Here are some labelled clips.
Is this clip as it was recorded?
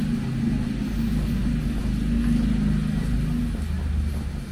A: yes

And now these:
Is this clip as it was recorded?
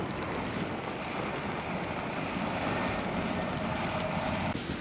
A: yes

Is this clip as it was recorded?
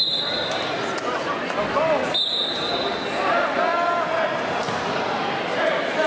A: yes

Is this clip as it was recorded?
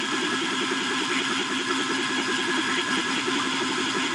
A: yes